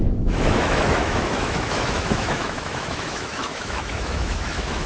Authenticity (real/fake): fake